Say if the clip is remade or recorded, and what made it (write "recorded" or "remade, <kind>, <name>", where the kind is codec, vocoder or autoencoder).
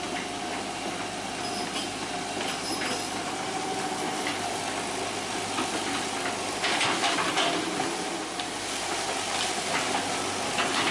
recorded